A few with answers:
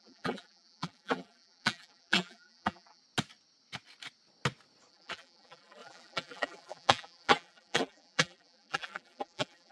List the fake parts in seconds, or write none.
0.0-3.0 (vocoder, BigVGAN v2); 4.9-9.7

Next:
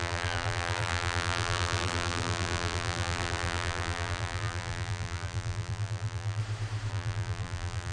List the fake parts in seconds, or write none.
0.0-6.4 (vocoder, BigVGAN v2); 6.9-7.9